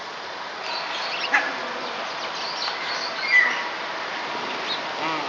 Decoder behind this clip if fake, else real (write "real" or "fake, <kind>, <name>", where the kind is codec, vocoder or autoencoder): real